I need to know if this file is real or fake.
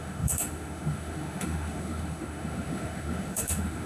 fake